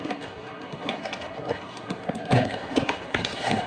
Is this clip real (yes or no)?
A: no